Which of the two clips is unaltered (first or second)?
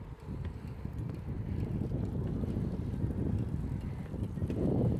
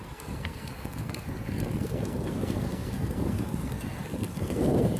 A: first